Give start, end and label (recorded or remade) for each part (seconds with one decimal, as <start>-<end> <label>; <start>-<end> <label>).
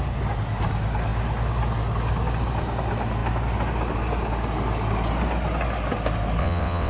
0.0-6.4 recorded; 6.4-6.9 remade